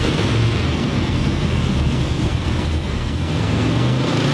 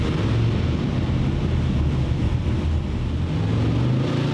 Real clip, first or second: second